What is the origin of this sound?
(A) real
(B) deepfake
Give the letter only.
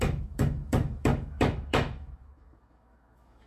B